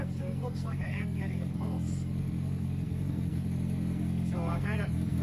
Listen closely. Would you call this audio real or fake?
fake